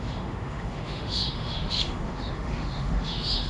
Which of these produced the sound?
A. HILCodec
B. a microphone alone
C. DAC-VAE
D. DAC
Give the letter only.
C